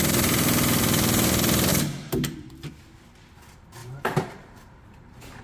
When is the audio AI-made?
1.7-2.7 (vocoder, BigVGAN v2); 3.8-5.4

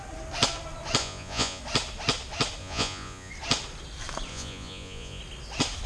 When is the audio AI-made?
1.0-1.6 (vocoder, Vocos); 2.6-3.3; 4.3-5.2